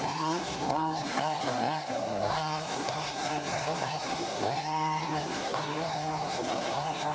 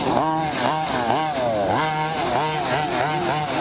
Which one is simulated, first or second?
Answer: first